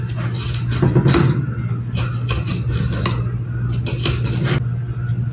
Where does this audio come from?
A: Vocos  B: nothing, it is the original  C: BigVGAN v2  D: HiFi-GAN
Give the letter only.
B